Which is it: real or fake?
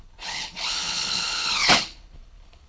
fake